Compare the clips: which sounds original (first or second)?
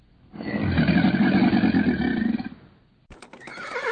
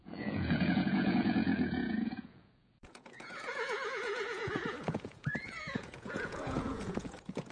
first